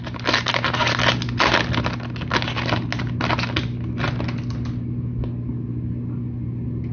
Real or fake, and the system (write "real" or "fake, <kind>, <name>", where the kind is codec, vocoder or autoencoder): real